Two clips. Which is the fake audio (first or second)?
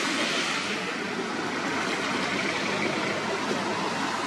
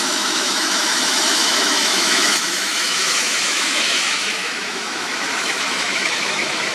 second